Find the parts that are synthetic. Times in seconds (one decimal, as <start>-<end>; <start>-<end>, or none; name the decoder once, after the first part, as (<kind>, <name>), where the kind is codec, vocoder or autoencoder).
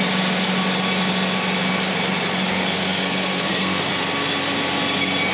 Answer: 2.5-3.9 (codec, SNAC)